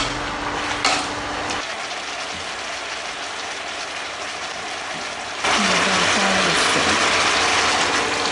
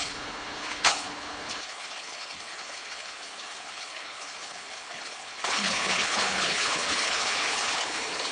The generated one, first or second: second